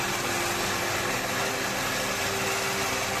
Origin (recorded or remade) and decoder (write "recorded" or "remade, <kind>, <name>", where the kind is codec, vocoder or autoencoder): recorded